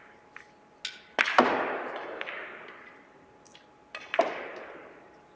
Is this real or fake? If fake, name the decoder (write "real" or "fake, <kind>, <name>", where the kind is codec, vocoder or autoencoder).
real